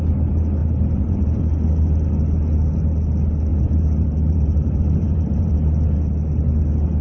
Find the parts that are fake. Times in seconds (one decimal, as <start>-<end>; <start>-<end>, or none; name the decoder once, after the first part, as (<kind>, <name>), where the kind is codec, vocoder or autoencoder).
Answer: 0.6-1.4 (vocoder, BigVGAN v2); 3.5-5.5